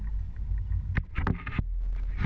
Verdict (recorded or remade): recorded